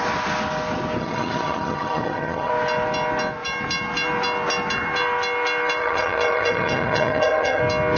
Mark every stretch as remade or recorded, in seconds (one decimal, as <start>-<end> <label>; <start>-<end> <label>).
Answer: 0.0-1.0 recorded; 1.0-2.5 remade; 2.5-5.8 recorded; 5.8-7.6 remade; 7.6-8.0 recorded